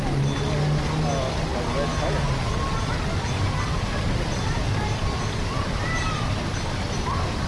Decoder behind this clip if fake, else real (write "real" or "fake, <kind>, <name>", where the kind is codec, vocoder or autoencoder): real